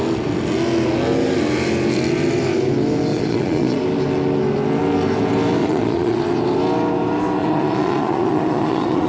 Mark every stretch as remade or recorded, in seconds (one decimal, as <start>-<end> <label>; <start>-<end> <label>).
0.0-3.1 recorded; 3.1-3.8 remade; 3.8-5.6 recorded; 5.6-6.2 remade; 6.2-7.4 recorded; 7.4-9.1 remade